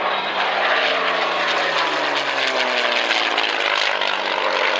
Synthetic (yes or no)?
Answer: no